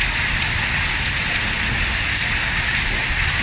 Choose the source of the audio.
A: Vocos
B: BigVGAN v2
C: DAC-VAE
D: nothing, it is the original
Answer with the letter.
D